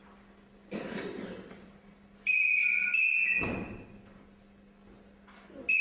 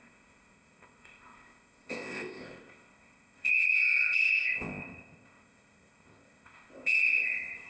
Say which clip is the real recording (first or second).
first